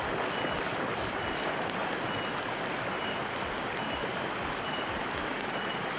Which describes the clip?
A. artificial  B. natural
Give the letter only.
B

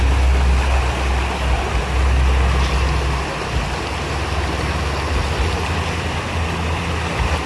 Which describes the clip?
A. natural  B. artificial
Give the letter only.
A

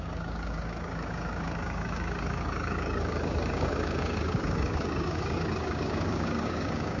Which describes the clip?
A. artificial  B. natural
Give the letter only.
A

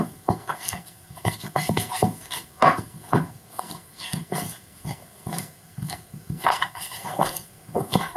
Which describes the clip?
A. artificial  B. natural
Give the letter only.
A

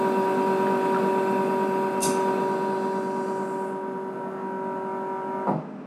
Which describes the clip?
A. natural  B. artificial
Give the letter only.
A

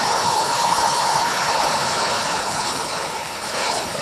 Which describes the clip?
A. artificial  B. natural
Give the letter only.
A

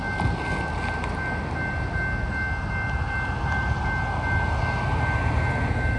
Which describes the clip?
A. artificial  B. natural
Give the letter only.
B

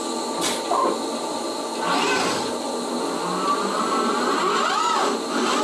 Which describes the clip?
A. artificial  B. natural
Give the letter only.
B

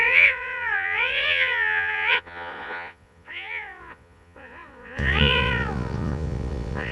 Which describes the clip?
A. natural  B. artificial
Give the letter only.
B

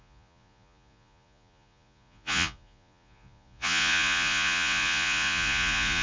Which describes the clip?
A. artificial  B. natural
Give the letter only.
A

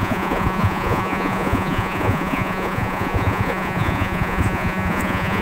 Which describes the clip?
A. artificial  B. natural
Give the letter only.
A